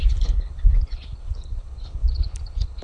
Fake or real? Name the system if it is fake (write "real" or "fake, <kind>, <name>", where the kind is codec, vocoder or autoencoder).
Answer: fake, codec, HILCodec